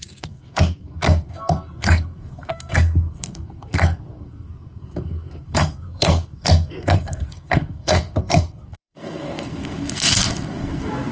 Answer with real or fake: fake